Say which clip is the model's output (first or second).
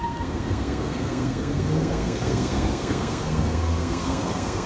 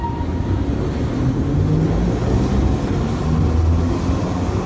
first